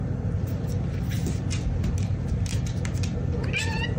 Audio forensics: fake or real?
real